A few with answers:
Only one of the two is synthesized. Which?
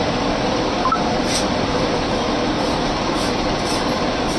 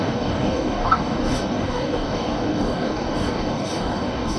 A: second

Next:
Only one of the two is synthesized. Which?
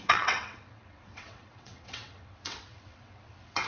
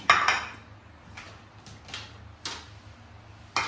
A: first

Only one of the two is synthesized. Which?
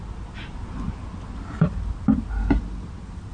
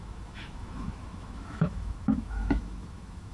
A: second